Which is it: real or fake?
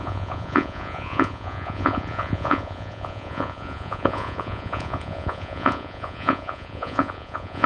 fake